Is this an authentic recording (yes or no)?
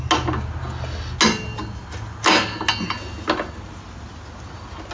yes